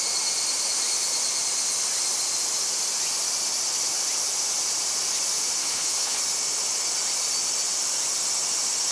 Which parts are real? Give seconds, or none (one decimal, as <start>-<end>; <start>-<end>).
0.0-5.6; 6.2-8.9